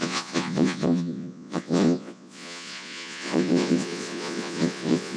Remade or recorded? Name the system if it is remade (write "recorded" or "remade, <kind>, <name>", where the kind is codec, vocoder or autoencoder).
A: remade, vocoder, Vocos